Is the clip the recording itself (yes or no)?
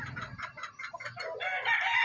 yes